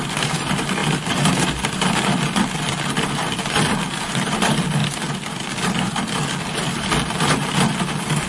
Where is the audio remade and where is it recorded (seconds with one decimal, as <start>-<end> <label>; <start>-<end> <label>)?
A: 0.0-0.8 remade; 0.8-1.5 recorded; 1.5-2.1 remade; 2.1-3.1 recorded; 3.1-4.8 remade; 4.8-6.4 recorded; 6.4-8.3 remade